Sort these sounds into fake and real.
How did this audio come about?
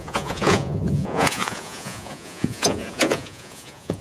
fake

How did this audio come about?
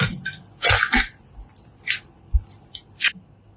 real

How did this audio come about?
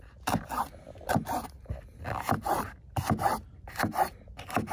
real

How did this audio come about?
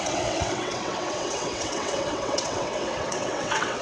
fake